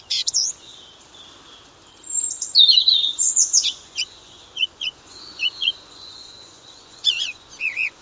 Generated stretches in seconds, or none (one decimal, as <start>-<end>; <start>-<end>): 0.0-0.7; 2.8-8.0